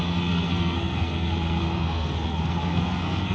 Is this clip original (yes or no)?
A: no